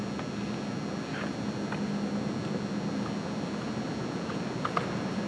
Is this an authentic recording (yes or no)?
yes